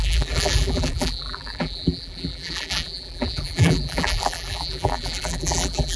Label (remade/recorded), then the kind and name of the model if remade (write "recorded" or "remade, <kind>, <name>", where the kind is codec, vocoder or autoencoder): remade, vocoder, BigVGAN v2